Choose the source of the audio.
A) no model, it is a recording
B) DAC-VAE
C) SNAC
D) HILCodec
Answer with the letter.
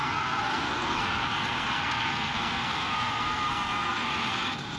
C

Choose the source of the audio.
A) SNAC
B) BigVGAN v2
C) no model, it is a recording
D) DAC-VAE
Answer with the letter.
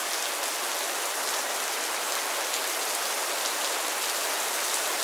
C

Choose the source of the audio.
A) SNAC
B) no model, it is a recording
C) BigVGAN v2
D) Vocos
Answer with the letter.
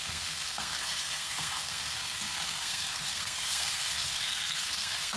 A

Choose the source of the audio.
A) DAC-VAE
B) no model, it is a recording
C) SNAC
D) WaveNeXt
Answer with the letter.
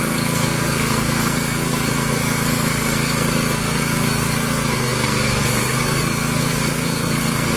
C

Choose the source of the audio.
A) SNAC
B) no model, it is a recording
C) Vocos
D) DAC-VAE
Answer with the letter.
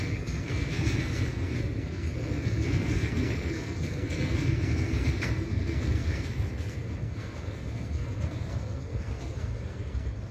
A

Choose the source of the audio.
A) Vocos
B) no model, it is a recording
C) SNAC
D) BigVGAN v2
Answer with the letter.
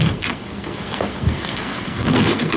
C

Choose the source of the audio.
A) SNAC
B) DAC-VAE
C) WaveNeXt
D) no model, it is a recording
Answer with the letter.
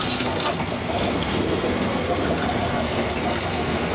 A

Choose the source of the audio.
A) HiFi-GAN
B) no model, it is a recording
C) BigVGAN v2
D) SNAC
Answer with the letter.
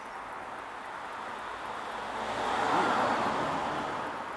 B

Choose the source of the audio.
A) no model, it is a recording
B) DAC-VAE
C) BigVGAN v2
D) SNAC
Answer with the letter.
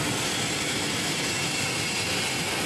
A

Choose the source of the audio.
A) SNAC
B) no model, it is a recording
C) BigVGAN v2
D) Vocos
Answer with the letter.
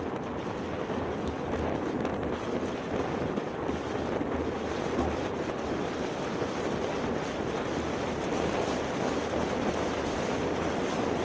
B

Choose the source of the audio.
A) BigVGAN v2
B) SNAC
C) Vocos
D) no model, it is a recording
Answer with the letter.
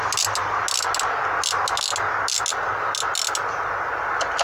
D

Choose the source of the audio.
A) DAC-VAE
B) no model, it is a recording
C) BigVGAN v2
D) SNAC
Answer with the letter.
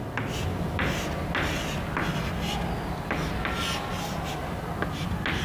B